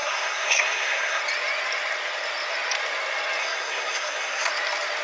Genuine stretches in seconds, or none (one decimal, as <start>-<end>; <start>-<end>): 1.2-3.4; 4.5-5.0